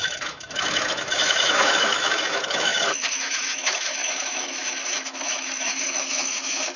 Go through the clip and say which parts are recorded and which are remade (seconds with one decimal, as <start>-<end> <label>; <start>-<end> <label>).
0.0-6.8 remade